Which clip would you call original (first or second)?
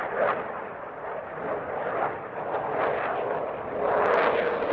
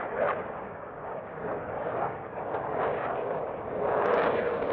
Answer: first